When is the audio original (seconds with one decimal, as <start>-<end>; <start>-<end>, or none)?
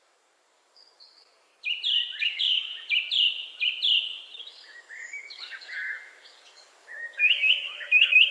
1.5-2.2; 2.7-4.4